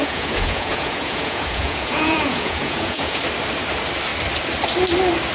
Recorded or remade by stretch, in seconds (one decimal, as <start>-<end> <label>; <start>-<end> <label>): 0.0-3.2 remade; 3.2-5.3 recorded